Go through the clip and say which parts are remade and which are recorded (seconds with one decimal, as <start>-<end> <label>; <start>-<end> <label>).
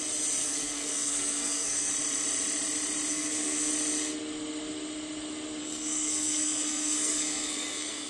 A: 0.0-0.4 recorded; 0.4-1.9 remade; 1.9-3.1 recorded; 3.1-3.7 remade; 3.7-5.6 recorded; 5.6-8.1 remade